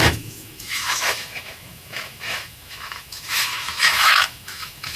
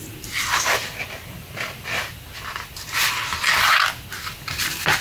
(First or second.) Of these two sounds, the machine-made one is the first